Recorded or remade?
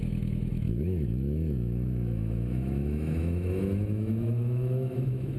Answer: remade